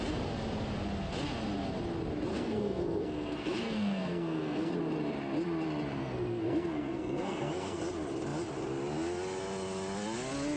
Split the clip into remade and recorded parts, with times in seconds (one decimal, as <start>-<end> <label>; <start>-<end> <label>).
0.0-2.3 recorded; 2.3-4.7 remade; 4.7-6.0 recorded; 6.0-7.8 remade; 7.8-10.6 recorded